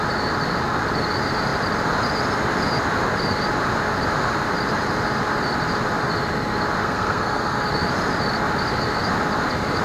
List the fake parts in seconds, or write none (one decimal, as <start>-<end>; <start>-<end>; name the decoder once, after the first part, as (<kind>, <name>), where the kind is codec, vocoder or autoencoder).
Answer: 6.8-7.7 (codec, SNAC)